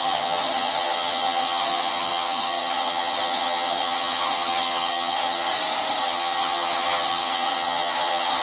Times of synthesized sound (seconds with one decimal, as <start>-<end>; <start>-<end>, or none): 0.0-5.5; 6.0-8.4